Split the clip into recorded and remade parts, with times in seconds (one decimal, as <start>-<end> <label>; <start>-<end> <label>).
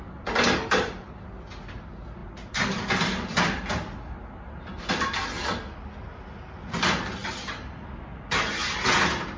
0.0-9.4 recorded